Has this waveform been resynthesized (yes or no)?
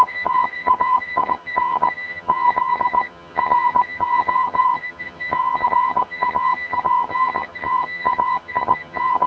yes